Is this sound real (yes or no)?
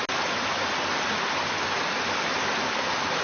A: yes